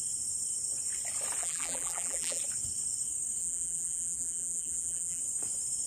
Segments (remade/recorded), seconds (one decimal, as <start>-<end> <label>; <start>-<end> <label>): 0.0-1.4 recorded; 1.4-2.4 remade; 2.4-3.4 recorded; 3.4-5.2 remade; 5.2-5.9 recorded